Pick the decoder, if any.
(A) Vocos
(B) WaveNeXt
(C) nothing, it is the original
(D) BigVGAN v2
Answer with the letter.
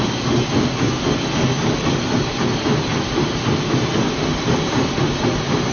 C